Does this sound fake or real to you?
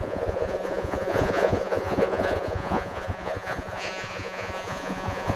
fake